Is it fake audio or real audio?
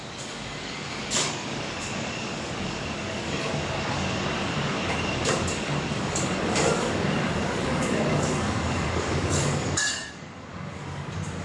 fake